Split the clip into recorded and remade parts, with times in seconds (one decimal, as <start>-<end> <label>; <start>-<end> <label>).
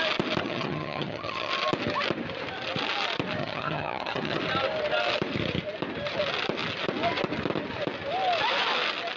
0.0-0.4 recorded; 0.4-1.5 remade; 1.5-3.4 recorded; 3.4-4.4 remade; 4.4-9.2 recorded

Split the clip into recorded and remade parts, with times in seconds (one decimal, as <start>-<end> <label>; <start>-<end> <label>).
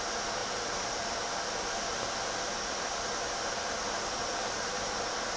0.0-0.4 recorded; 0.4-1.2 remade; 1.2-4.3 recorded; 4.3-5.0 remade; 5.0-5.4 recorded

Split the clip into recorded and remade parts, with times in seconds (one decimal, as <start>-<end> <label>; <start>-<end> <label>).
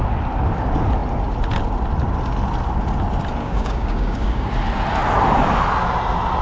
0.0-3.4 recorded; 3.4-4.5 remade; 4.5-6.4 recorded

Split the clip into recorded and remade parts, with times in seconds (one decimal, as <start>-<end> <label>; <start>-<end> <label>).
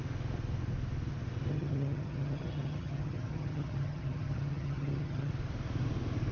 0.0-1.5 recorded; 1.5-5.3 remade; 5.3-6.3 recorded